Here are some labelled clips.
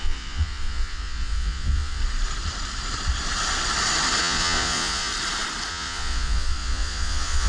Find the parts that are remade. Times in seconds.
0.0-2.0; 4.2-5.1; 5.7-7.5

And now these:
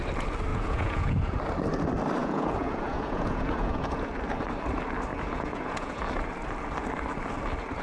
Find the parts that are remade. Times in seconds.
0.5-1.4; 2.2-4.1; 5.1-6.0